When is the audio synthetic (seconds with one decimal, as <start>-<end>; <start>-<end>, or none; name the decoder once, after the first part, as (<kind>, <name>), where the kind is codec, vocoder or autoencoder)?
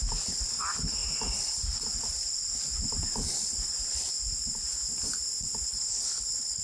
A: 5.7-6.6 (codec, HILCodec)